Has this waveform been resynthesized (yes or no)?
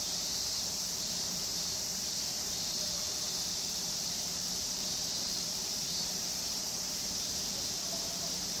yes